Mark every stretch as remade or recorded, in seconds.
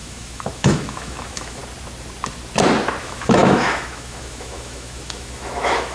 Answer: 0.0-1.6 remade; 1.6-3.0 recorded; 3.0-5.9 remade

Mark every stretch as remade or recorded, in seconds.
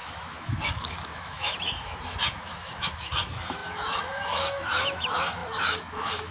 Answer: 0.0-6.3 remade